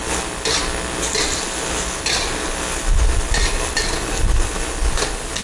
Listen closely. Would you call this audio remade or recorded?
recorded